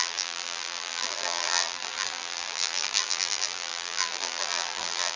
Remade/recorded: remade